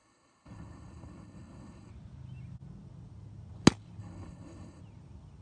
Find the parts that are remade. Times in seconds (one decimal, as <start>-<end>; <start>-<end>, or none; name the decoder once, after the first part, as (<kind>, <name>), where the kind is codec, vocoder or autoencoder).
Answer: 0.0-1.9 (codec, HILCodec); 4.0-4.8